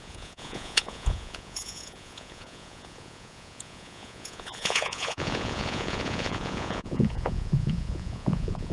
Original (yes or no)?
no